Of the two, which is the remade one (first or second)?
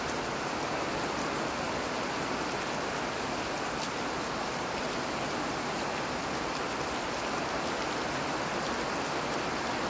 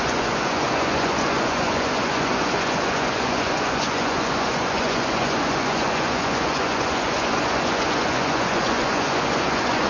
second